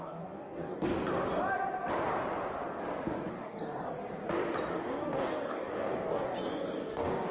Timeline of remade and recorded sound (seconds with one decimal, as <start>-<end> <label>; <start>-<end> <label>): 0.0-0.9 remade; 0.9-3.3 recorded; 3.3-3.9 remade; 3.9-4.7 recorded; 4.7-7.3 remade